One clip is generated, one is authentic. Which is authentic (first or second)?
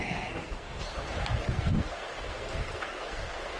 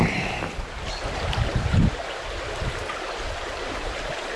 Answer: second